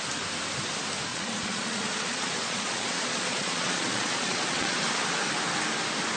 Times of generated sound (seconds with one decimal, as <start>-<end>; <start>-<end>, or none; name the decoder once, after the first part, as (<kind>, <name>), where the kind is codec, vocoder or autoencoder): 1.1-4.8 (vocoder, Vocos)